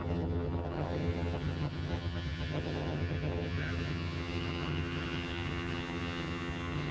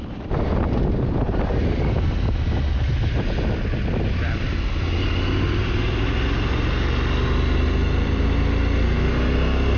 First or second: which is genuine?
second